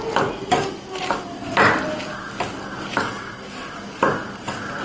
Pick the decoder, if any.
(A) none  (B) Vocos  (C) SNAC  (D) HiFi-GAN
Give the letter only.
A